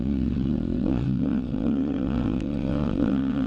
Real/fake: fake